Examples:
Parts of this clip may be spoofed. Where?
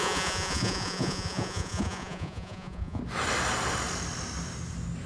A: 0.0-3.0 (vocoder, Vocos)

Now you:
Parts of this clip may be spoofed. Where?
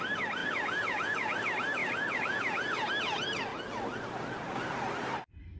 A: 0.4-1.4 (vocoder, Vocos); 1.8-2.9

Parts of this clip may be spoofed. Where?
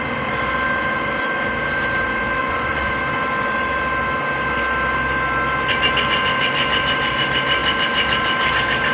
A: 2.4-2.9 (vocoder, Vocos)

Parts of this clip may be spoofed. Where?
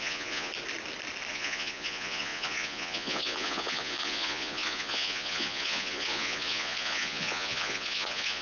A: 0.0-0.5 (vocoder, Vocos); 1.3-8.4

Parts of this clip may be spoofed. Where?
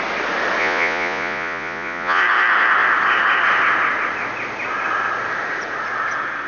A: 0.6-2.2 (vocoder, Vocos)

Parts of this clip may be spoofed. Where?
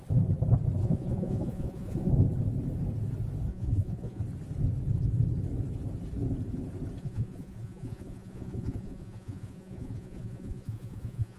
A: 0.8-2.1 (vocoder, Vocos); 3.5-4.2; 7.0-11.4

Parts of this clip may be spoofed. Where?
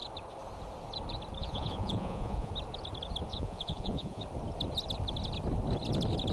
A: 1.4-2.5 (vocoder, Vocos); 3.3-4.2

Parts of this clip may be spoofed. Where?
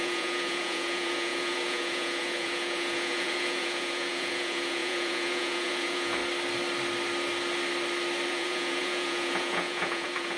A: 0.0-6.2 (vocoder, Vocos); 8.3-10.4